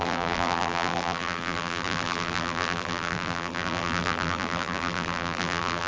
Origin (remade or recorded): remade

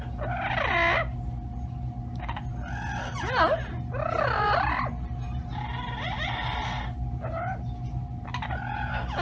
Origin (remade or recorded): recorded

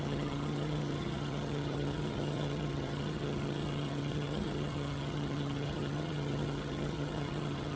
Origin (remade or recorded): remade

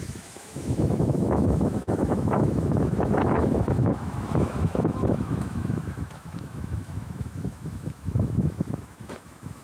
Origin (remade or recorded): remade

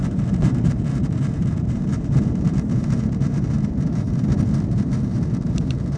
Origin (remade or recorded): remade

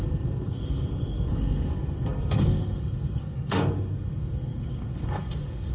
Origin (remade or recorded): remade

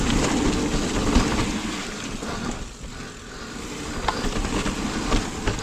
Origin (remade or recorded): recorded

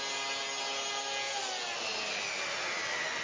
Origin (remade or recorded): recorded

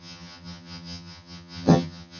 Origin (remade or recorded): remade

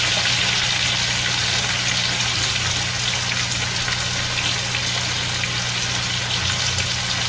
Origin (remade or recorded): recorded